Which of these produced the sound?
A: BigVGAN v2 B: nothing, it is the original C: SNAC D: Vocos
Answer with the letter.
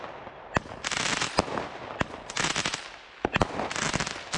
B